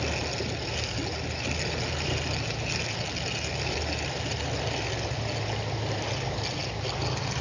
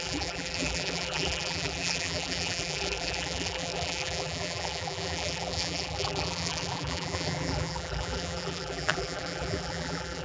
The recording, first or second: first